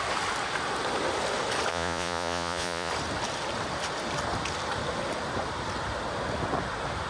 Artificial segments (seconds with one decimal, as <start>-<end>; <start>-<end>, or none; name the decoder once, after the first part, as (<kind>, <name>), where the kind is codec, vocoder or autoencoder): 1.7-2.9 (vocoder, Vocos)